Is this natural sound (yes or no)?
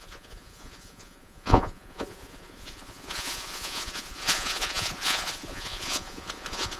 no